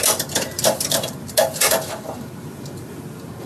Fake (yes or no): yes